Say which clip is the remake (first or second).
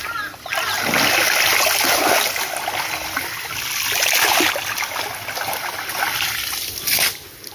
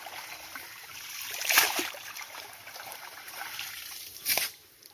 second